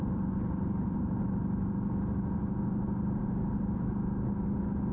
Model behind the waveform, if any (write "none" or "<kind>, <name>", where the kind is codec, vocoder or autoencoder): none